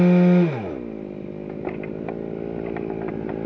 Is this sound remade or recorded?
recorded